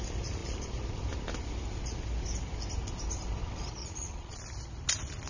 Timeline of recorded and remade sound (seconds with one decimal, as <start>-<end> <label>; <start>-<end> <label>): 0.0-3.8 recorded; 3.8-4.4 remade; 4.4-5.3 recorded